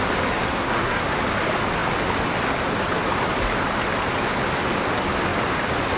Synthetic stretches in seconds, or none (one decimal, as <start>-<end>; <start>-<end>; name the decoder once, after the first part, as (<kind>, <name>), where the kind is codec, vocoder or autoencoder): 0.5-1.1 (codec, SNAC)